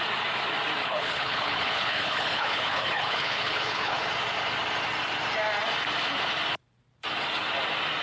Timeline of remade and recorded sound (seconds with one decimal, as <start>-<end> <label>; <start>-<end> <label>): 0.0-0.8 recorded; 0.8-4.1 remade; 4.1-8.0 recorded